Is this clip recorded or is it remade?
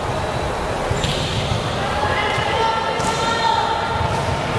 recorded